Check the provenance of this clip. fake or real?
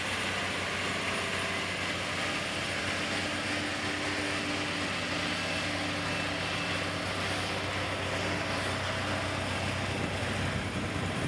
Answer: real